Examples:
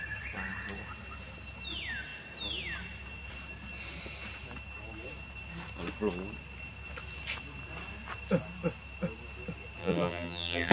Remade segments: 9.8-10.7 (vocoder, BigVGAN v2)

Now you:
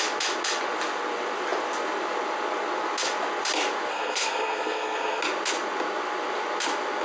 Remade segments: 3.9-5.2 (codec, SNAC)

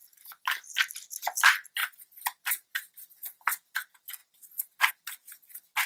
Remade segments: none